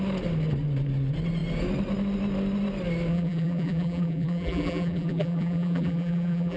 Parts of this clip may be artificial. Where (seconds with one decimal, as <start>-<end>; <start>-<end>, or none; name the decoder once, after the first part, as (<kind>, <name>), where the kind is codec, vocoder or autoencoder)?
3.1-6.6 (vocoder, BigVGAN v2)